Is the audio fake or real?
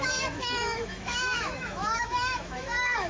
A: fake